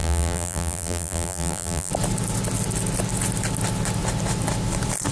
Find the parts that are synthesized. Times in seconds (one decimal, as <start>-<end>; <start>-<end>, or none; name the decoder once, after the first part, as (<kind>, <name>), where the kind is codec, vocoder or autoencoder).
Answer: 0.0-1.9 (vocoder, BigVGAN v2)